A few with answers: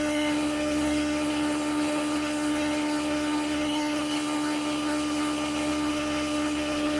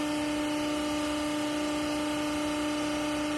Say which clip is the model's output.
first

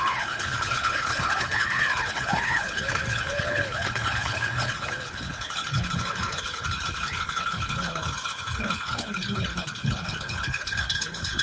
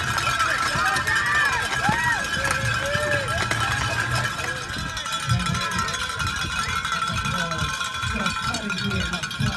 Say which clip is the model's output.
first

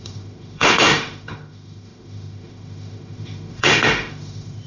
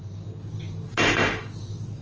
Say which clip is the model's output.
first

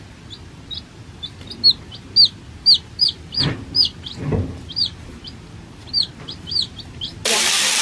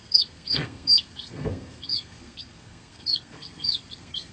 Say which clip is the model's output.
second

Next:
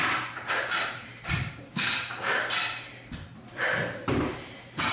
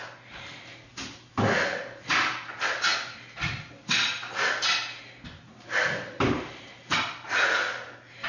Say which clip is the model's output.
first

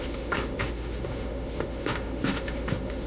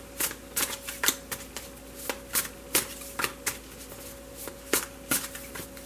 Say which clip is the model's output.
first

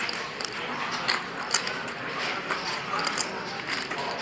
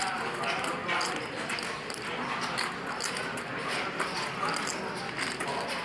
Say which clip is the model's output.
first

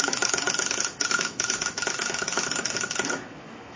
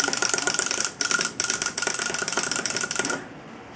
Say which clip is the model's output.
first